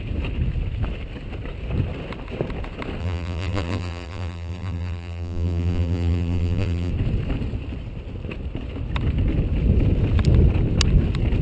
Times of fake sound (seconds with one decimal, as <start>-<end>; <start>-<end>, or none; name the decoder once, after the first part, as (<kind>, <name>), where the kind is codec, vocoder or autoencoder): 3.0-6.9 (vocoder, BigVGAN v2)